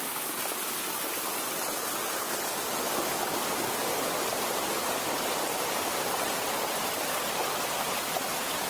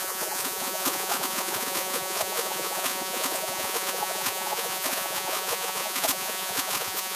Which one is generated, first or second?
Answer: second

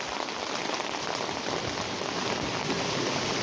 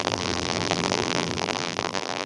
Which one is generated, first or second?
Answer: second